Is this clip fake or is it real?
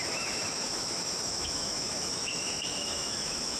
fake